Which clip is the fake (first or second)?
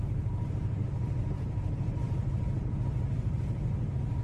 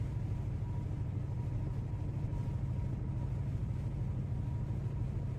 first